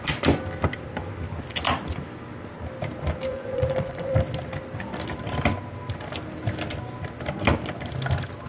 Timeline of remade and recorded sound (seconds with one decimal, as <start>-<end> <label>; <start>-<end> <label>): 0.0-3.3 recorded; 3.3-4.1 remade; 4.1-8.5 recorded